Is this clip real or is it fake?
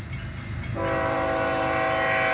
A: real